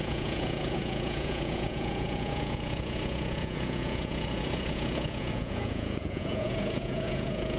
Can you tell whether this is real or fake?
fake